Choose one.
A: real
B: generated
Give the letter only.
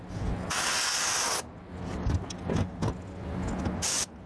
A